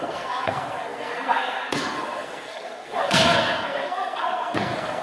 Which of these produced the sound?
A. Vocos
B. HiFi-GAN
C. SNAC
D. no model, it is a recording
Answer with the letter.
C